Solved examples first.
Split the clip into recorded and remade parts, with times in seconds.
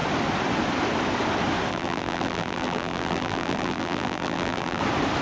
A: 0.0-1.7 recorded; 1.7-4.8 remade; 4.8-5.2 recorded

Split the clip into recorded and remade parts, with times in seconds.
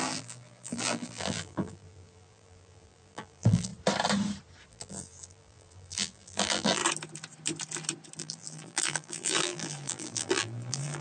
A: 0.0-3.7 remade; 3.7-4.7 recorded; 4.7-6.8 remade; 6.8-8.2 recorded; 8.2-11.0 remade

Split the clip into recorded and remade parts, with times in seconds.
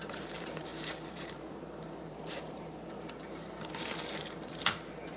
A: 0.0-5.2 remade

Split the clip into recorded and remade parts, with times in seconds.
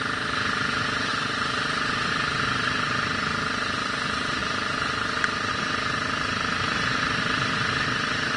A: 0.0-1.1 recorded; 1.1-2.1 remade; 2.1-8.4 recorded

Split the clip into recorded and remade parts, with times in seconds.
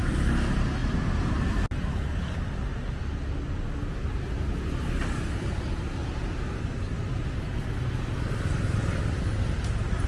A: 0.0-10.1 recorded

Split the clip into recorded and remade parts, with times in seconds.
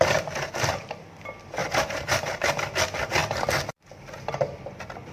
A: 0.0-1.6 recorded; 1.6-2.5 remade; 2.5-5.1 recorded